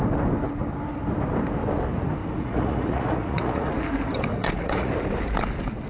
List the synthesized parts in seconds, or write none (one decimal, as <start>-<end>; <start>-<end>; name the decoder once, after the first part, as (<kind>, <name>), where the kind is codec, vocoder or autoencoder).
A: 2.2-3.7 (vocoder, Vocos); 4.3-4.9